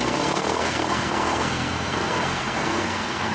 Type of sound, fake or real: fake